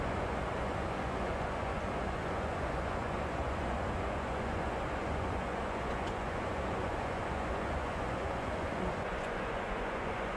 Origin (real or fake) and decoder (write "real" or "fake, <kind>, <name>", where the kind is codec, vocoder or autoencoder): fake, vocoder, Vocos